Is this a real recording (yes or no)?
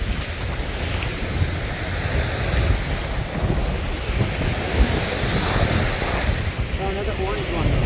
yes